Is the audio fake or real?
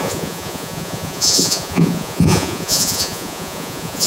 fake